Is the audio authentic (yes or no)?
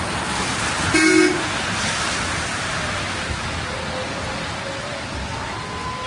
yes